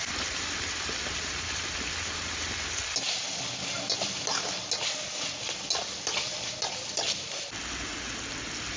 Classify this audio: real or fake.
real